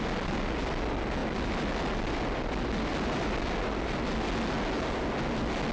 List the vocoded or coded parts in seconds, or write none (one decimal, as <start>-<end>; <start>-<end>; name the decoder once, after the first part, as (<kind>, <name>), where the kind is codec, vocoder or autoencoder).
2.9-3.4 (vocoder, BigVGAN v2)